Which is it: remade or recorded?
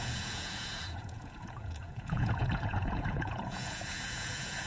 remade